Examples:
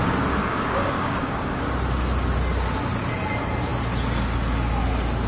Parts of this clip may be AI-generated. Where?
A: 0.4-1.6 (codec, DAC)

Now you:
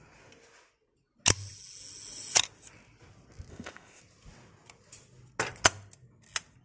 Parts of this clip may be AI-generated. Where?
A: 3.5-4.0 (codec, ZipCodec)

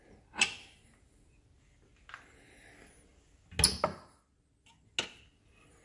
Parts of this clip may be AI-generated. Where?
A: none

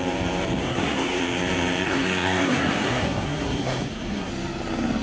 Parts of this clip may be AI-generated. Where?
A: 0.6-1.2 (codec, SNAC); 1.8-4.3

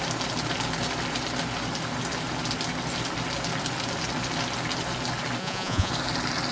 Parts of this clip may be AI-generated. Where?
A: 5.4-5.9 (vocoder, Vocos)

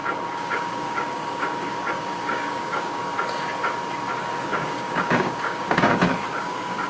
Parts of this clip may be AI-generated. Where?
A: 0.0-3.0 (codec, DAC); 4.4-6.9

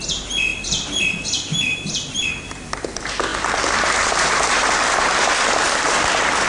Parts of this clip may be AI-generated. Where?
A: 0.5-2.3 (vocoder, BigVGAN v2); 3.3-6.5

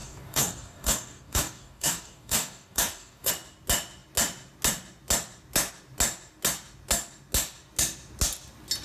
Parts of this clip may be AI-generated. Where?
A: 0.0-3.3 (codec, DAC)